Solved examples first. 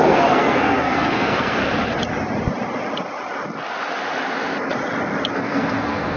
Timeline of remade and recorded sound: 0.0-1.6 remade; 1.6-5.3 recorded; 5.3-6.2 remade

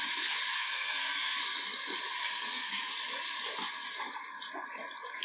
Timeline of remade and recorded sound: 0.0-0.6 recorded; 0.6-1.4 remade; 1.4-2.2 recorded; 2.2-2.9 remade; 2.9-5.2 recorded

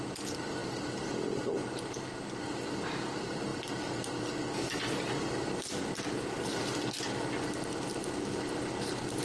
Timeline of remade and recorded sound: 0.0-9.2 recorded